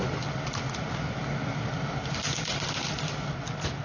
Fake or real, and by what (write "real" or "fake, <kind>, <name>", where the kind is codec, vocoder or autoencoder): real